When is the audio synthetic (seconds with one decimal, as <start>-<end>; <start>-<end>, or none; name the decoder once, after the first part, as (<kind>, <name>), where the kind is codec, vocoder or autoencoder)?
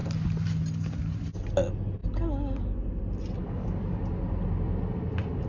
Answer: 3.4-4.0 (codec, DAC)